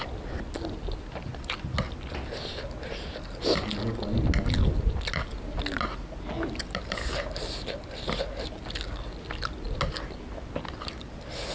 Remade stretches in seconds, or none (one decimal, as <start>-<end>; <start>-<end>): none